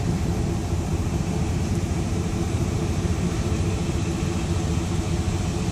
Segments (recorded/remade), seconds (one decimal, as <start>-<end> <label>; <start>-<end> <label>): 0.0-0.9 recorded; 0.9-4.1 remade; 4.1-5.7 recorded